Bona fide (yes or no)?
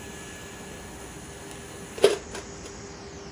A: yes